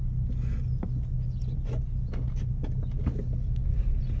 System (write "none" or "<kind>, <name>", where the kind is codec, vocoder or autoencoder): none